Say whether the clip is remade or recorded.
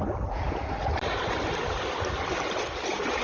recorded